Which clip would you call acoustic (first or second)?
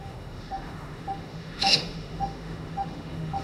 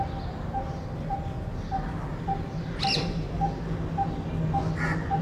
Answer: second